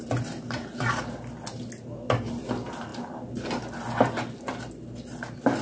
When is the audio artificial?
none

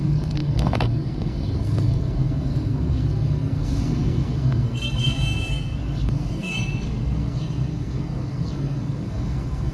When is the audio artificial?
0.0-9.7